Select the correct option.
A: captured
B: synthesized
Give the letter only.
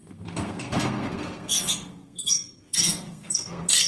B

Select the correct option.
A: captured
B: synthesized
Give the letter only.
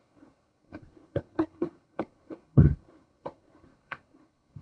B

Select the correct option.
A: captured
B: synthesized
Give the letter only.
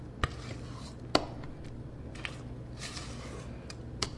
A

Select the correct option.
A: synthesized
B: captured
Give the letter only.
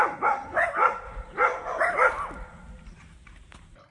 B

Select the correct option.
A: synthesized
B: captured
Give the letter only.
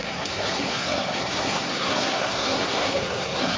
A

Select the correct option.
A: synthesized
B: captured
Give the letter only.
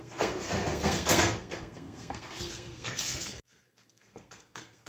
A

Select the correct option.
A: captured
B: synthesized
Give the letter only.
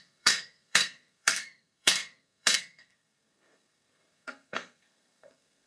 B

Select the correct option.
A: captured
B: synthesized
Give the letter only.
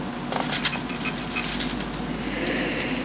A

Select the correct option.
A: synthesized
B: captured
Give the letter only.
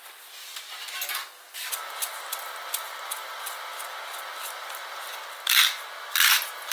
B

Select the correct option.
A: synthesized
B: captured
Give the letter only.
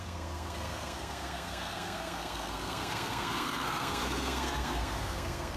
A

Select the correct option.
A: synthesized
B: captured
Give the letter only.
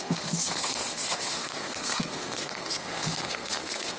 A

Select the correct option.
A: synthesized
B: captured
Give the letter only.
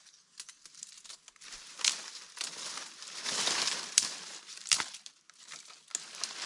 B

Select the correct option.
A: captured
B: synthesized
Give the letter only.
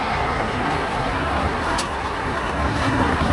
B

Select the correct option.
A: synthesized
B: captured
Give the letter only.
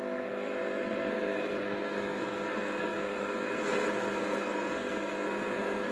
A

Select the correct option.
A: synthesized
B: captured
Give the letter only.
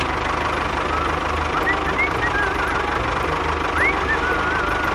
B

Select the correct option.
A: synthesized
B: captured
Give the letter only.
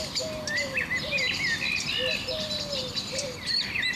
B